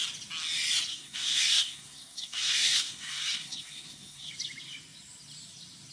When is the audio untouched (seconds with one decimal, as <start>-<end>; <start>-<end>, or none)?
0.0-0.9; 4.3-5.9